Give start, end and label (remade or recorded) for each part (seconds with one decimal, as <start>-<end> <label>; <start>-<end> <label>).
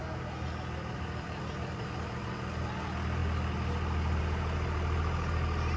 0.0-5.8 recorded